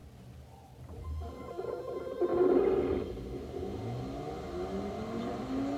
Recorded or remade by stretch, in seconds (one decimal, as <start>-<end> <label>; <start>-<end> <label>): 0.0-1.4 recorded; 1.4-2.3 remade; 2.3-5.2 recorded; 5.2-5.8 remade